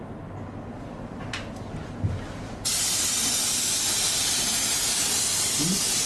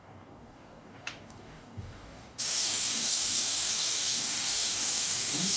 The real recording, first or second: first